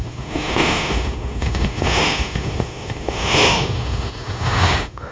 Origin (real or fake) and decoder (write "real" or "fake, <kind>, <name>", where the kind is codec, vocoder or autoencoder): fake, autoencoder, DAC-VAE